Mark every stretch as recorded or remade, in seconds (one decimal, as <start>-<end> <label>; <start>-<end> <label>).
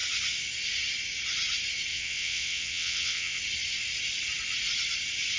0.0-1.9 recorded; 1.9-3.4 remade; 3.4-5.4 recorded